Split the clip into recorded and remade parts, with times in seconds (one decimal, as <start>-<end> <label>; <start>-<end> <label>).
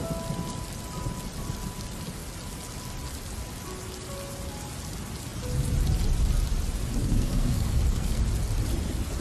0.0-7.0 recorded; 7.0-8.2 remade; 8.2-9.2 recorded